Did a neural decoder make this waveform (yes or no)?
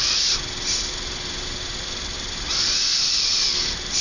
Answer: no